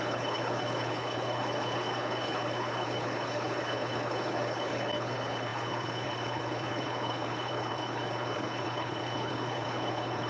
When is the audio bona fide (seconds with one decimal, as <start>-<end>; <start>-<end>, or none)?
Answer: none